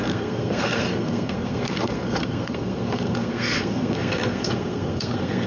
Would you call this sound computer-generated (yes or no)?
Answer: yes